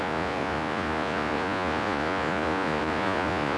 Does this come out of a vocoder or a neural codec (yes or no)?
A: yes